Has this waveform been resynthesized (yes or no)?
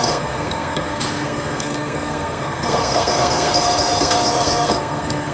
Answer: yes